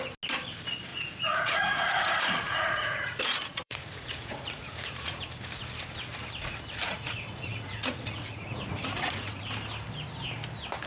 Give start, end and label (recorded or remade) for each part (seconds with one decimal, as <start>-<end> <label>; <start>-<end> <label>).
0.0-0.9 recorded; 0.9-5.2 remade; 5.2-6.8 recorded; 6.8-9.4 remade; 9.4-10.9 recorded